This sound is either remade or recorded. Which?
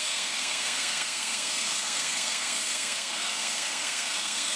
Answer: remade